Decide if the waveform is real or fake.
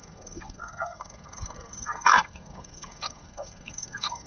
fake